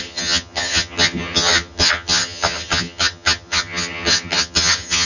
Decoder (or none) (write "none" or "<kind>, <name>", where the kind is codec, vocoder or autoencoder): vocoder, HiFi-GAN